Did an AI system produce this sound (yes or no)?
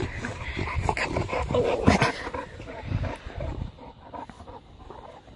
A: no